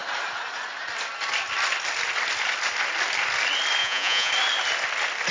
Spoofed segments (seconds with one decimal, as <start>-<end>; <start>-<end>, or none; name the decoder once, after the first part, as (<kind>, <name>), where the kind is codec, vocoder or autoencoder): 3.8-4.3 (vocoder, Vocos)